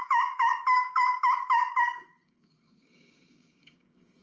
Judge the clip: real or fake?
fake